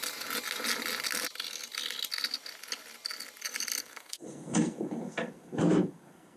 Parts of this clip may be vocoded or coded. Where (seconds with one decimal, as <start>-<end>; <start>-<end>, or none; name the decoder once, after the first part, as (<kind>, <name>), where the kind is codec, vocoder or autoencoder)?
3.8-6.4 (codec, SNAC)